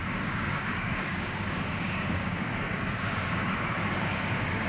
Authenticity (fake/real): fake